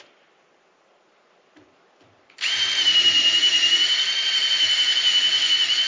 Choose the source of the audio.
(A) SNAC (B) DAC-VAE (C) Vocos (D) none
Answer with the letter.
D